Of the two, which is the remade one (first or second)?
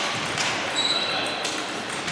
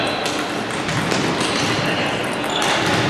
first